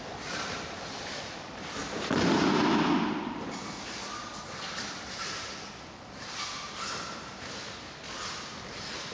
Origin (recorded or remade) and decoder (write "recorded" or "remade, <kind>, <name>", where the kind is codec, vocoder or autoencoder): recorded